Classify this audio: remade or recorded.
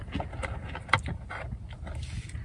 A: recorded